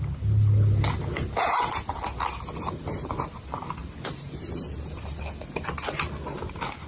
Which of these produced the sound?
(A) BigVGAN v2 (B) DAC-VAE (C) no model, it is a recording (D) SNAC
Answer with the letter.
C